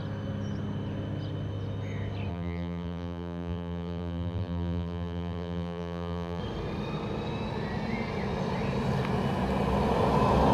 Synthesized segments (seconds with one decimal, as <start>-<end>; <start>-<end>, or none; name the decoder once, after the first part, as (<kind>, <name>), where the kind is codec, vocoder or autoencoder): 2.3-6.4 (vocoder, BigVGAN v2)